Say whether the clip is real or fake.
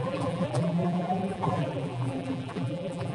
fake